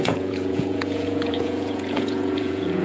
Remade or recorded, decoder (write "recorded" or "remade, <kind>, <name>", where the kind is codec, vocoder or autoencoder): remade, vocoder, Vocos